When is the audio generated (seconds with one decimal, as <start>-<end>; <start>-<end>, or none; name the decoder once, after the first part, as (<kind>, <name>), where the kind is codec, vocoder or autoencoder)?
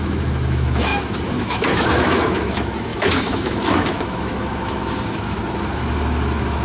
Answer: 0.0-6.6 (autoencoder, DAC-VAE)